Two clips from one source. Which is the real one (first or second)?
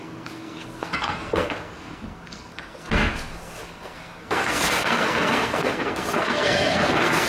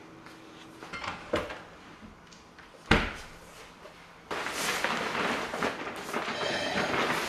second